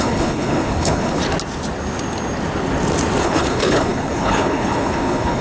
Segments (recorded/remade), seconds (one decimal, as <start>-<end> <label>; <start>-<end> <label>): 0.0-1.2 remade; 1.2-3.2 recorded; 3.2-5.4 remade